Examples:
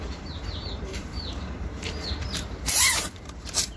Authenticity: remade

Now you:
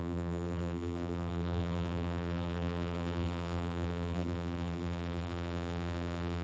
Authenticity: remade